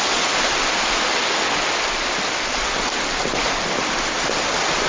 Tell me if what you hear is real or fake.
fake